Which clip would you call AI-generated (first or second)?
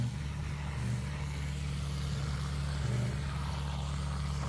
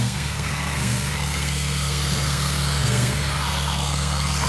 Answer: second